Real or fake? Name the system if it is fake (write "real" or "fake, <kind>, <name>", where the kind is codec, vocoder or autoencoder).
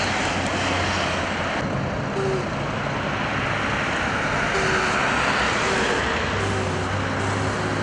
real